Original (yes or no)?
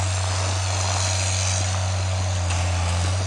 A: yes